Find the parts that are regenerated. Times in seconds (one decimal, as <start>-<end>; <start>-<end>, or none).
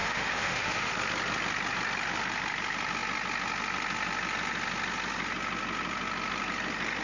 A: 0.0-0.9